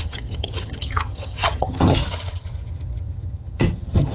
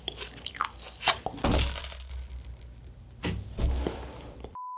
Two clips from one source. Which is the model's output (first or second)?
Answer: first